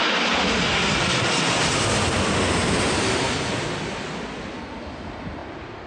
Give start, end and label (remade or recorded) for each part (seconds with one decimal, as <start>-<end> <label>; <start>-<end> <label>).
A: 0.0-5.9 recorded